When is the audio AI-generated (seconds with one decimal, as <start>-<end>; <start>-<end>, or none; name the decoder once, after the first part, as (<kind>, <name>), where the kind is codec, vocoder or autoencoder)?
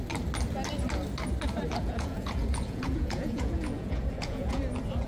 1.8-4.6 (vocoder, Vocos)